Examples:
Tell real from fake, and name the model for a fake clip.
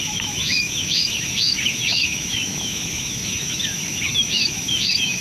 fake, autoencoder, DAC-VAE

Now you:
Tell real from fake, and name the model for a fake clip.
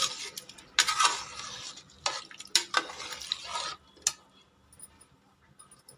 real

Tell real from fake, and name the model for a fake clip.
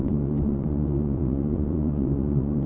fake, vocoder, Vocos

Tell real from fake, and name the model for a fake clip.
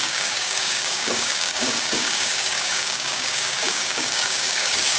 fake, codec, DAC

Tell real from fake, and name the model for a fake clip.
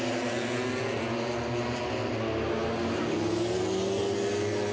real